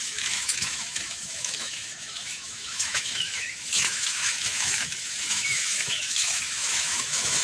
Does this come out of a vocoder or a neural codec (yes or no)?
yes